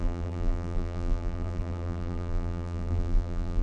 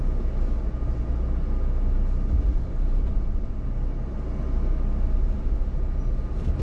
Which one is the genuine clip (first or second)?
second